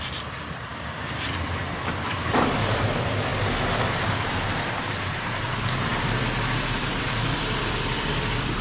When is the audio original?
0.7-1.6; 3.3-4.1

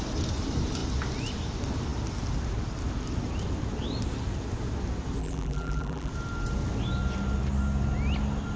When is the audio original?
0.0-5.2; 6.1-8.6